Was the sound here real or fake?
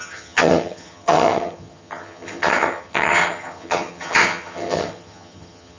fake